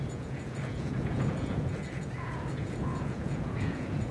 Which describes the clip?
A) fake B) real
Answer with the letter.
A